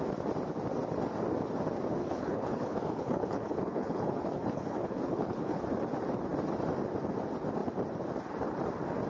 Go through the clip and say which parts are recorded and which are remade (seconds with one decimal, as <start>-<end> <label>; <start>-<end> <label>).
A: 0.0-2.0 recorded; 2.0-5.6 remade; 5.6-9.1 recorded